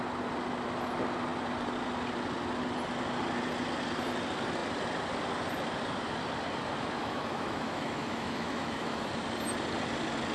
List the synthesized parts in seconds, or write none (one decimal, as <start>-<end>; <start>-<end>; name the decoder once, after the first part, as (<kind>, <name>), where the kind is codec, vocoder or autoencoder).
7.0-9.1 (autoencoder, DAC-VAE)